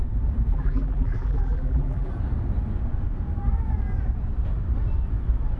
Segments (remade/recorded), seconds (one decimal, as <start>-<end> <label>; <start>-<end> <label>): 0.0-0.5 recorded; 0.5-2.1 remade; 2.1-5.6 recorded